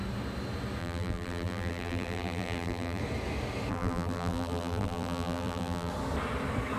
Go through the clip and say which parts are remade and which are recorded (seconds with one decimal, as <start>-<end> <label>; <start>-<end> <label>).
0.0-0.8 recorded; 0.8-3.0 remade; 3.0-3.7 recorded; 3.7-5.9 remade; 5.9-6.8 recorded